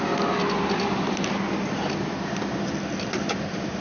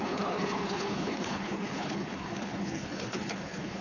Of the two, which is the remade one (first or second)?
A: second